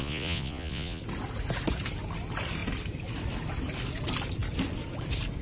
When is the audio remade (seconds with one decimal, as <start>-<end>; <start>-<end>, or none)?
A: 0.0-1.0